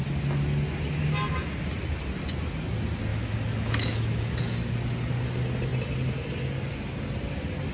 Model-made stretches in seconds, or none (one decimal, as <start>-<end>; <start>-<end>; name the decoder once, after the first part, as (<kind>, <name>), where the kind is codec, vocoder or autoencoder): 3.1-4.4 (autoencoder, DAC-VAE)